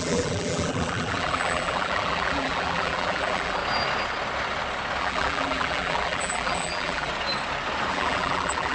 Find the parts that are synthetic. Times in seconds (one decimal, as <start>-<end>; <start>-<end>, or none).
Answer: 0.0-3.6; 5.0-7.1; 7.9-8.7